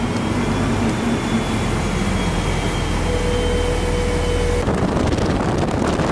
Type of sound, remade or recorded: recorded